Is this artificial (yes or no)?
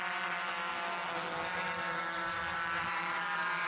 no